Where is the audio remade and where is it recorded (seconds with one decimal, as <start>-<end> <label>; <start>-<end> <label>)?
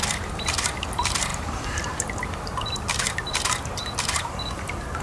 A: 0.0-5.0 remade